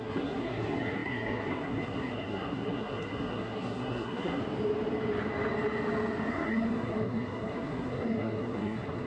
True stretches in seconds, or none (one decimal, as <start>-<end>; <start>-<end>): 4.4-6.3